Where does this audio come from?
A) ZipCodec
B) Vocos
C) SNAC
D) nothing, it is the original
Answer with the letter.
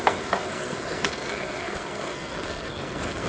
C